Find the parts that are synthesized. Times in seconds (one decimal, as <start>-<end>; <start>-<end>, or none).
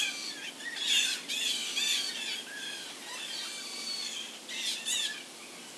none